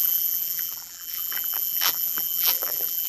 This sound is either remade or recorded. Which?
remade